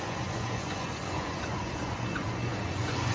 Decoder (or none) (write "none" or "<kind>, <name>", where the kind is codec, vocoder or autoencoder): vocoder, Vocos